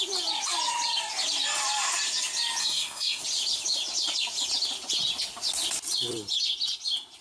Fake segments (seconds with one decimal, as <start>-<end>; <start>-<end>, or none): 2.6-3.2